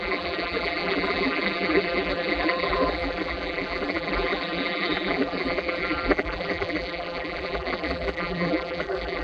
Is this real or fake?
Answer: fake